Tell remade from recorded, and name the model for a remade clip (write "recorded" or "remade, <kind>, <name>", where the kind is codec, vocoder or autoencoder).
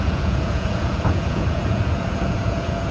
remade, vocoder, Vocos